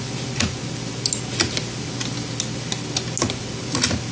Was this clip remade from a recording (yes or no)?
no